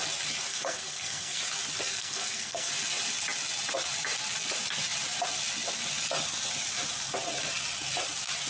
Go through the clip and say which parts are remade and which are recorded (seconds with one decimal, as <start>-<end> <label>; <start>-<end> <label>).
0.0-0.5 recorded; 0.5-1.4 remade; 1.4-1.9 recorded; 1.9-2.7 remade; 2.7-8.5 recorded